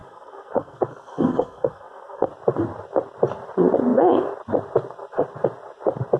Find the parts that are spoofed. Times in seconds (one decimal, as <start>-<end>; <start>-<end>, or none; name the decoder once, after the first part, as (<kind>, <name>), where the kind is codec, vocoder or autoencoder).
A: 0.0-2.3 (codec, SNAC)